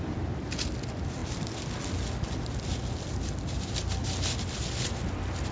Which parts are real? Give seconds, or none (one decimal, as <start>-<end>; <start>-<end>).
0.0-5.5